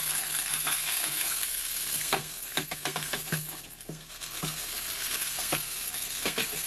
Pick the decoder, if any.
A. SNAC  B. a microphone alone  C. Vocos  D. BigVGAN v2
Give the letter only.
A